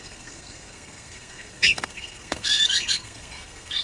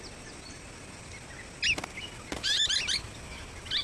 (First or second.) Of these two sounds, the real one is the second